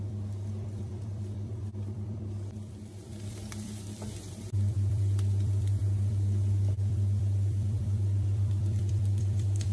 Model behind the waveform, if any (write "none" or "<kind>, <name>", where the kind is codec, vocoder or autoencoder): vocoder, BigVGAN v2